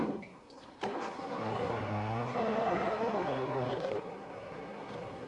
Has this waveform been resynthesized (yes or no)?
yes